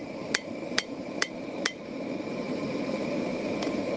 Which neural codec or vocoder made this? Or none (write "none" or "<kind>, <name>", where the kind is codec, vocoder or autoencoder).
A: vocoder, BigVGAN v2